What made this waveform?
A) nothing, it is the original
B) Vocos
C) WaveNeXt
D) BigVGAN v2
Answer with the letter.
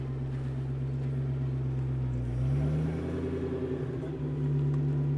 A